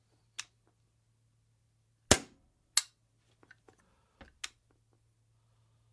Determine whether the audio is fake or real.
real